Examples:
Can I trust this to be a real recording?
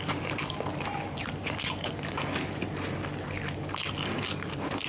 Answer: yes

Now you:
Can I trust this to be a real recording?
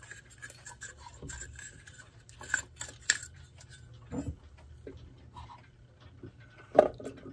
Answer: yes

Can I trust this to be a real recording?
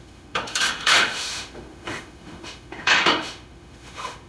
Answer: no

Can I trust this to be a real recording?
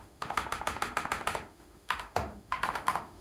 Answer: no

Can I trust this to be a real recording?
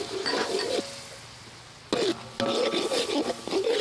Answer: yes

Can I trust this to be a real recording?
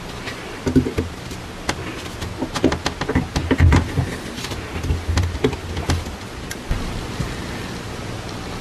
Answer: yes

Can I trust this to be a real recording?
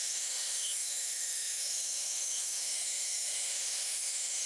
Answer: no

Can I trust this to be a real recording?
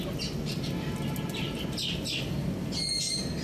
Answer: yes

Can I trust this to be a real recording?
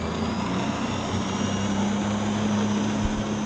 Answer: yes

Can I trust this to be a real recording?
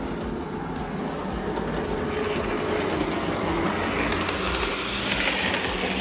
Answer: yes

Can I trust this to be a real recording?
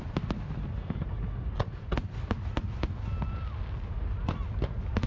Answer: yes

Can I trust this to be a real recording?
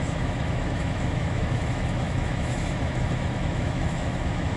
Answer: no